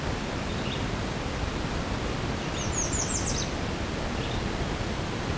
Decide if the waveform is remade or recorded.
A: recorded